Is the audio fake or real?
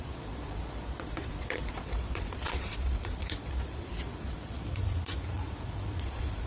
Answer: fake